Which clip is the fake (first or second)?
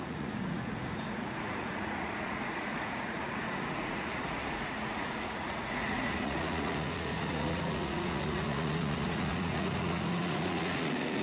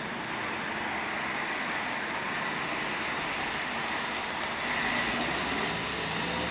first